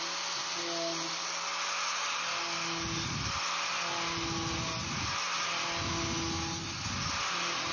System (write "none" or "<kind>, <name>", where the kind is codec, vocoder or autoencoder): none